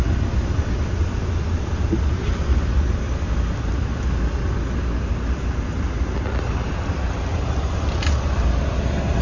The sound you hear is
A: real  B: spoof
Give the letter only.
A